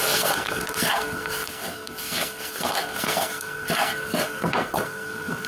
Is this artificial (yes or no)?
yes